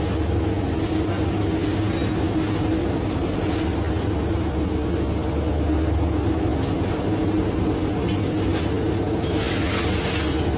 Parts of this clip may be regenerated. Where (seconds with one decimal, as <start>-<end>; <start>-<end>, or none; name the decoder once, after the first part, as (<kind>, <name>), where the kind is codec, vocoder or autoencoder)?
2.8-3.6 (vocoder, BigVGAN v2)

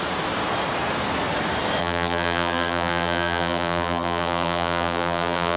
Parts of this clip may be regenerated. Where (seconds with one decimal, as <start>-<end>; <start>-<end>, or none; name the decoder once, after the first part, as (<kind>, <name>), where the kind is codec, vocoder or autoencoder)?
1.8-5.6 (vocoder, BigVGAN v2)

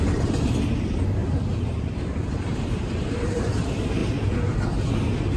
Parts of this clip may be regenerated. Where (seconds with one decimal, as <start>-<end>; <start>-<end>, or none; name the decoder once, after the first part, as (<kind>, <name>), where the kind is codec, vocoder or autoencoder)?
1.2-3.6 (vocoder, BigVGAN v2)

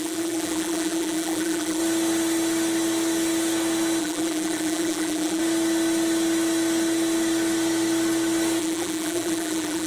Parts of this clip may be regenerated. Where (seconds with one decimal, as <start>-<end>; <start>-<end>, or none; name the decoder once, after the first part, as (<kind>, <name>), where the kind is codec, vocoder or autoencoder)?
0.0-1.8 (vocoder, BigVGAN v2); 4.0-5.4; 8.6-9.9

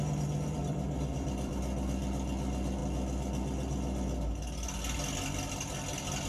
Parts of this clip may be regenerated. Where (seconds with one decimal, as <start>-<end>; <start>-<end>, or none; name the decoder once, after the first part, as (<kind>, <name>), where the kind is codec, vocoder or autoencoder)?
0.6-1.5 (vocoder, BigVGAN v2)

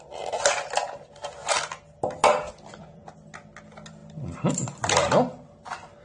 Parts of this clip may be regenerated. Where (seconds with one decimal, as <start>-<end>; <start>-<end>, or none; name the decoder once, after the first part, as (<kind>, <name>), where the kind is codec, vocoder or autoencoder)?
none

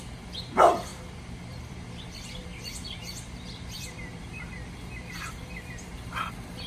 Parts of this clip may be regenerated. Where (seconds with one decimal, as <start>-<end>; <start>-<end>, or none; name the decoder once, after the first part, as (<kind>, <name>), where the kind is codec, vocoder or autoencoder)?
0.0-6.7 (vocoder, BigVGAN v2)

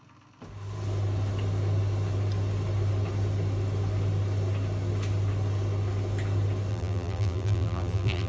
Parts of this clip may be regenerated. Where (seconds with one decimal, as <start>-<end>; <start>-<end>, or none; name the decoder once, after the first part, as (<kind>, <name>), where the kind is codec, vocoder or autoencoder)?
6.7-8.3 (vocoder, BigVGAN v2)